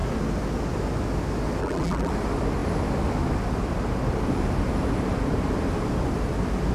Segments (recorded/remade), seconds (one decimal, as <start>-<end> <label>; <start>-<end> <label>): 0.0-1.6 recorded; 1.6-2.1 remade; 2.1-6.7 recorded